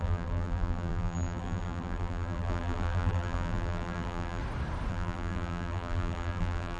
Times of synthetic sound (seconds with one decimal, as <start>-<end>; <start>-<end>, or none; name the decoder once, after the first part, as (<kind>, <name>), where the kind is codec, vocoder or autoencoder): 0.0-4.4 (vocoder, BigVGAN v2); 4.9-6.8